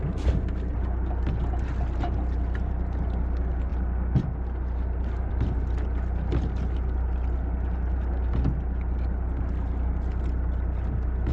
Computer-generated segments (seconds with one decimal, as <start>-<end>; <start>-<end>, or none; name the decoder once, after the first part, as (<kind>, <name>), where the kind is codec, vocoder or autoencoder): none